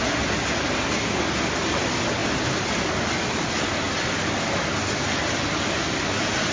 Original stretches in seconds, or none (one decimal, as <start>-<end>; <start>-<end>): 0.0-6.5